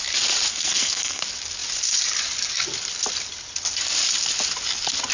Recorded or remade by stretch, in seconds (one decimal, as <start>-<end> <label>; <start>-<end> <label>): 0.0-0.5 recorded; 0.5-1.2 remade; 1.2-5.1 recorded